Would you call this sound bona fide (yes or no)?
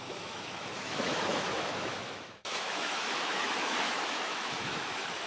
no